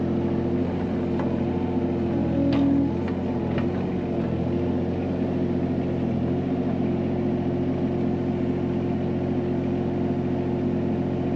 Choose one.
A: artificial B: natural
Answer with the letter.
B